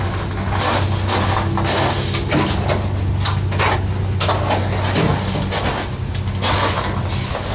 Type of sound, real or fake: real